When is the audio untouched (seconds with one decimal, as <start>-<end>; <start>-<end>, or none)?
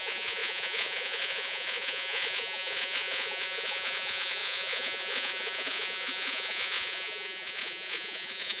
none